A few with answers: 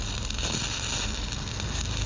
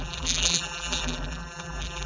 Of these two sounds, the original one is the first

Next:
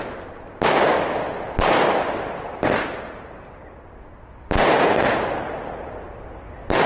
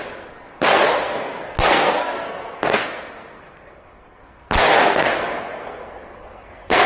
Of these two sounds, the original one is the first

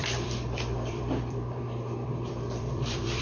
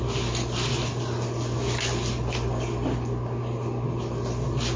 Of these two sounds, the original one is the second